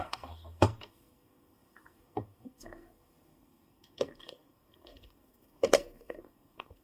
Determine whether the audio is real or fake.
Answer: fake